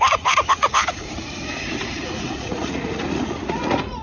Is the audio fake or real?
fake